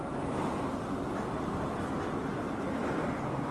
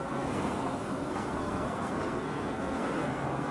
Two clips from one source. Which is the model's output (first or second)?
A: second